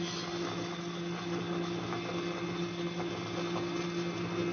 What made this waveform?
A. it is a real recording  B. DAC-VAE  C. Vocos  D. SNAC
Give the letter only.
A